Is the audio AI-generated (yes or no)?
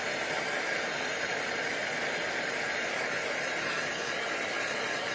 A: no